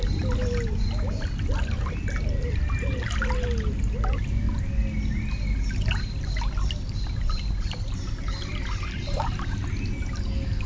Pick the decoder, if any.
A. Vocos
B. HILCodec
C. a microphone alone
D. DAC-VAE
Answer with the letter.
C